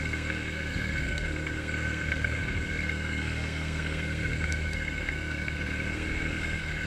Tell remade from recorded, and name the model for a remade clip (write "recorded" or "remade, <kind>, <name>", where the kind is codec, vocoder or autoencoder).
remade, codec, SNAC